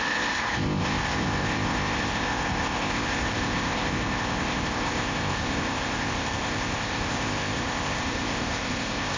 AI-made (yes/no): yes